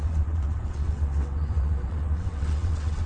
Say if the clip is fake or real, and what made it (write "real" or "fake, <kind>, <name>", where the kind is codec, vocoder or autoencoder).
fake, vocoder, WaveNeXt